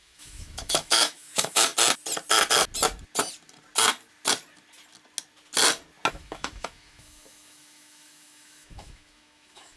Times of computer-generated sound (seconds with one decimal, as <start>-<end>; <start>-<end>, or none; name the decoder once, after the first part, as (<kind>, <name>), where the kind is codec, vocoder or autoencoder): 0.0-1.7 (autoencoder, DAC-VAE); 6.1-9.8